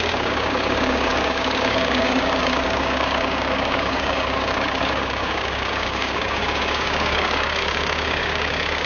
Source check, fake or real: fake